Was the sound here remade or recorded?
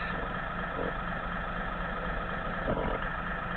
recorded